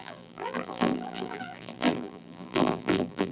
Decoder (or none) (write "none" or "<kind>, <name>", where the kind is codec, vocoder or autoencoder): vocoder, BigVGAN v2